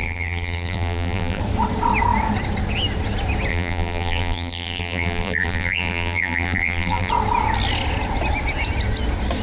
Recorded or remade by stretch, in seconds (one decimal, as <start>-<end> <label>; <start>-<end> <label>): 0.0-1.4 remade; 1.4-3.5 recorded; 3.5-7.1 remade; 7.1-9.4 recorded

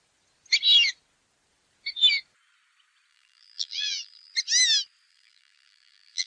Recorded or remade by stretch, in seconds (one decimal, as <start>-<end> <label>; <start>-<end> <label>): 0.0-3.1 recorded; 3.1-4.3 remade; 4.3-5.1 recorded; 5.1-6.3 remade

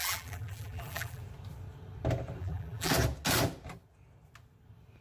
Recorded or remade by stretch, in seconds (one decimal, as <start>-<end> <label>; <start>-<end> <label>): 0.0-1.2 remade; 1.2-2.4 recorded; 2.4-2.9 remade; 2.9-5.0 recorded

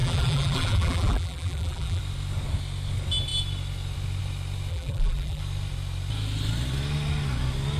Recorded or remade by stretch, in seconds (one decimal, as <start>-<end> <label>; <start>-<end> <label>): 0.0-2.0 remade; 2.0-4.7 recorded; 4.7-5.4 remade; 5.4-7.8 recorded

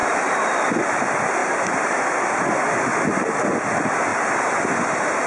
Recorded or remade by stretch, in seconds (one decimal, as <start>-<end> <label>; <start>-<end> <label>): 0.0-0.6 remade; 0.6-2.9 recorded; 2.9-3.4 remade; 3.4-5.3 recorded

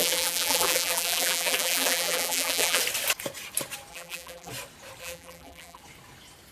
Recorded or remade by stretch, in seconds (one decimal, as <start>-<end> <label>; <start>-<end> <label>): 0.0-2.8 remade; 2.8-3.9 recorded; 3.9-4.5 remade; 4.5-5.0 recorded; 5.0-5.8 remade; 5.8-6.5 recorded

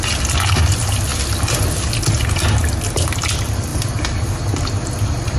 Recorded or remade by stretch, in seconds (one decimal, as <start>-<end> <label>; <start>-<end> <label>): 0.0-5.4 recorded